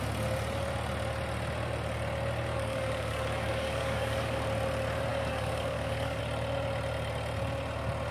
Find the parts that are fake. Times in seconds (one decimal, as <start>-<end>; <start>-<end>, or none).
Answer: 2.5-4.4; 5.1-6.2